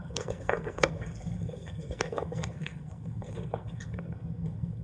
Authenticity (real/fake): fake